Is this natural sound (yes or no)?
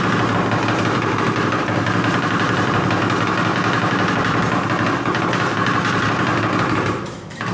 yes